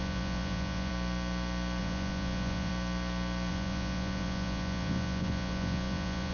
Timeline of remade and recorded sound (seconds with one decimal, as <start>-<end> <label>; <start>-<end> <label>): 0.0-0.9 remade; 0.9-1.8 recorded; 1.8-2.7 remade; 2.7-3.5 recorded; 3.5-6.3 remade